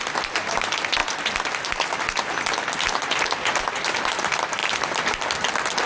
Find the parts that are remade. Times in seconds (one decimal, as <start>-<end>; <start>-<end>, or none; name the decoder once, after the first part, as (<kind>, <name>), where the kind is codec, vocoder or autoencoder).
0.0-1.0 (vocoder, BigVGAN v2); 3.6-5.9